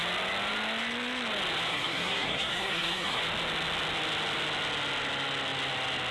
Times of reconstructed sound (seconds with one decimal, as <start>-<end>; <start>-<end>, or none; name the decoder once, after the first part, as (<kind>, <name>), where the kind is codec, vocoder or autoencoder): 1.7-3.2 (codec, SNAC)